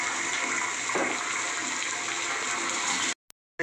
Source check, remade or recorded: recorded